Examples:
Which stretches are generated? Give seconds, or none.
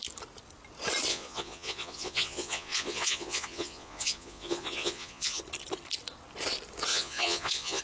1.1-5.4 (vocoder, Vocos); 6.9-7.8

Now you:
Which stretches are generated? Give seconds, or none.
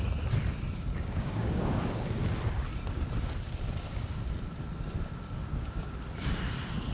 0.9-2.0 (codec, DAC); 5.4-6.0